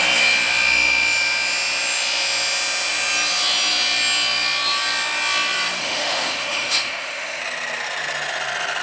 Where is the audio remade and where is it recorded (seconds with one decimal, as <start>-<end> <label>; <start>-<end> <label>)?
0.0-5.8 recorded; 5.8-7.4 remade; 7.4-8.8 recorded